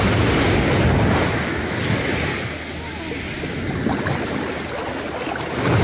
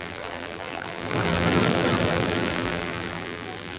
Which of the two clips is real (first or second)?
first